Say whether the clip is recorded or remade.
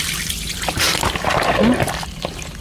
recorded